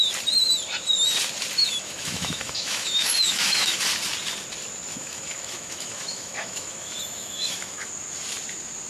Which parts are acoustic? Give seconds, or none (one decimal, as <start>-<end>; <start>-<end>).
0.0-1.6; 3.8-4.9; 7.9-8.9